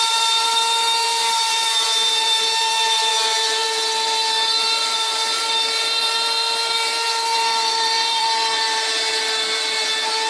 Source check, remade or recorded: remade